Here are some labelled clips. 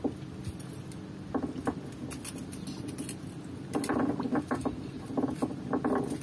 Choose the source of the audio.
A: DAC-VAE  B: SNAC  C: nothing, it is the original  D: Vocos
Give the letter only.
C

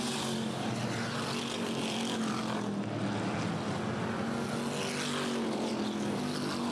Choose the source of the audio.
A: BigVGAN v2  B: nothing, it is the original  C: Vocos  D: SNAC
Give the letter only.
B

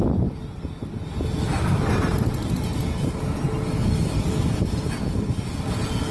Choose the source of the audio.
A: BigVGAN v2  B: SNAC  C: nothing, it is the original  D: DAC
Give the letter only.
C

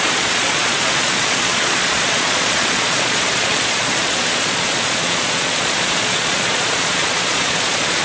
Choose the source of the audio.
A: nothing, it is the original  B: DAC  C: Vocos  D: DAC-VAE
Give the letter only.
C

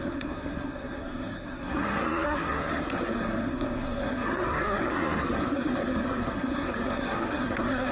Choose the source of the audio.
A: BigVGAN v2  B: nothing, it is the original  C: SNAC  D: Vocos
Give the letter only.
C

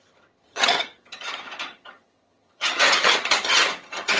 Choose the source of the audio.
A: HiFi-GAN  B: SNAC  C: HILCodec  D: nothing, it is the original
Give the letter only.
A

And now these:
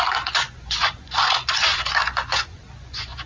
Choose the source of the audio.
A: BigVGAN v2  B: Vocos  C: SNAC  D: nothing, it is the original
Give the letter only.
B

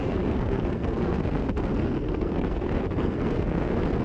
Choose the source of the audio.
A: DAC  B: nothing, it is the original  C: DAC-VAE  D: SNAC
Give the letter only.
D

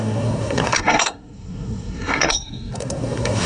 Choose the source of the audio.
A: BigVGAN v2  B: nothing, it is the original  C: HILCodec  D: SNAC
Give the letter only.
D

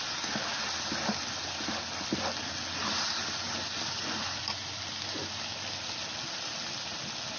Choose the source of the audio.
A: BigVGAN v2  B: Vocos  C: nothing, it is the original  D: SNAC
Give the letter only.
C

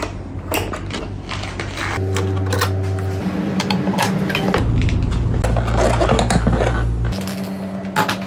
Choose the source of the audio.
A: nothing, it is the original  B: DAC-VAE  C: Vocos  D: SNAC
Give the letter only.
A